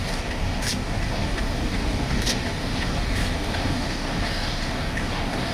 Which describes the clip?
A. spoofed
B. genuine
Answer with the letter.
A